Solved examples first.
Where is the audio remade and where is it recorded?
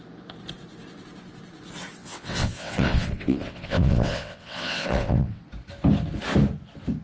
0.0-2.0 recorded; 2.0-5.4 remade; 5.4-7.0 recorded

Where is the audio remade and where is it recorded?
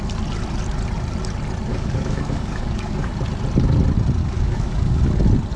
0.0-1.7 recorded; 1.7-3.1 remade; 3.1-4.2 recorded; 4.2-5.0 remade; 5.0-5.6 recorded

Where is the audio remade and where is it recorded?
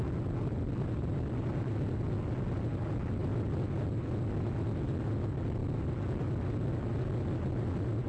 0.0-5.6 remade; 5.6-7.4 recorded; 7.4-8.1 remade